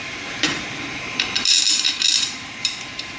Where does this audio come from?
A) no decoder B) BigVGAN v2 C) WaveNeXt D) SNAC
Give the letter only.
B